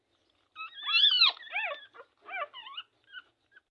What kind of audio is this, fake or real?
real